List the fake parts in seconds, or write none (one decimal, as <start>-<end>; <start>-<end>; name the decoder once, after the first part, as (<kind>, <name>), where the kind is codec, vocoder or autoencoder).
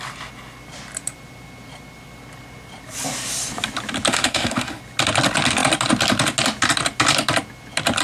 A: 4.1-4.8 (autoencoder, DAC-VAE)